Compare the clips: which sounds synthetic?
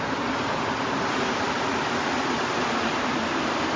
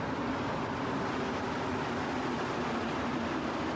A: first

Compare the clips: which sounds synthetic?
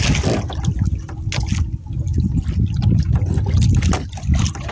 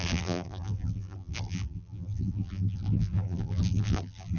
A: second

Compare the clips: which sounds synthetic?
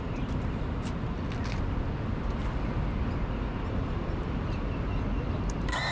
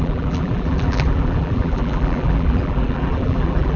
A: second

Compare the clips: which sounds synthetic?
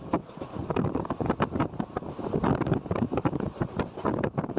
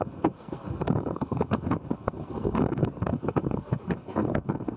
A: second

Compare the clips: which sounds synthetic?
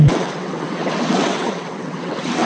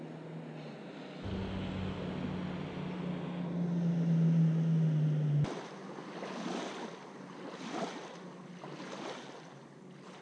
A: first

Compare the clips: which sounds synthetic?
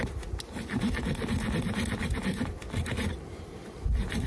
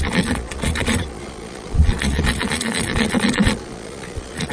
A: second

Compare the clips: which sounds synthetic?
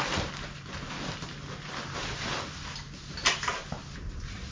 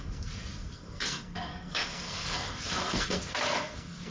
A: second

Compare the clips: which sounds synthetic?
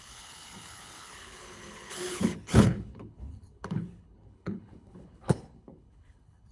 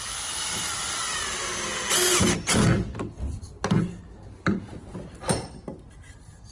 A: first